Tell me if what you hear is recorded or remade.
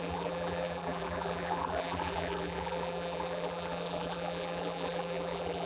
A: remade